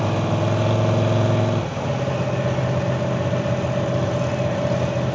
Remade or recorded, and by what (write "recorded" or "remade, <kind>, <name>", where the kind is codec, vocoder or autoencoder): recorded